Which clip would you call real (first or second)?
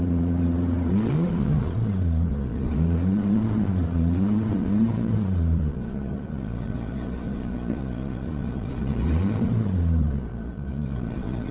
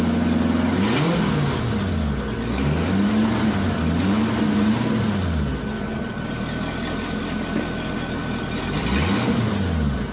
second